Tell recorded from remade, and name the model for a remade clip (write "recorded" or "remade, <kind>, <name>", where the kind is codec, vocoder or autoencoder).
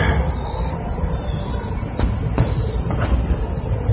recorded